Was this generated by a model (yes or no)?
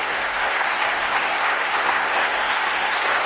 yes